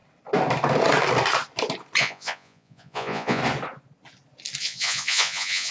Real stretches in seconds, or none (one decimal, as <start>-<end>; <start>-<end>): 0.0-2.0; 3.4-4.6